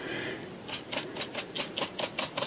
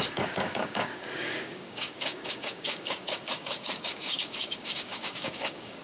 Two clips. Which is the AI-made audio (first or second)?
second